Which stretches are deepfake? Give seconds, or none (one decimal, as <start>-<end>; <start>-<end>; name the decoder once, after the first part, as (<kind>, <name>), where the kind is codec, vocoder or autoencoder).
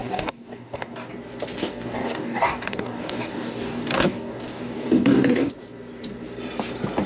0.0-1.1 (codec, DAC); 1.6-5.5